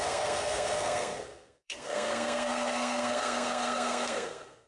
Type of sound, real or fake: fake